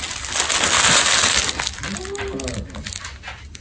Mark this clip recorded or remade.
recorded